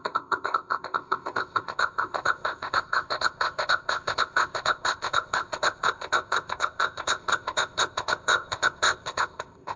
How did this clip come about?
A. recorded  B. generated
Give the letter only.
B